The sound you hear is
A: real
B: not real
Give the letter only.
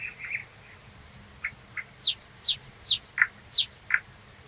A